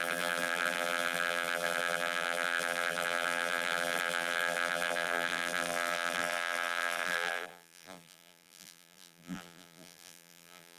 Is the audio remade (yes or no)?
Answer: yes